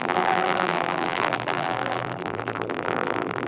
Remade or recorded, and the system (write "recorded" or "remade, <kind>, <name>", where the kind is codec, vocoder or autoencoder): remade, vocoder, BigVGAN v2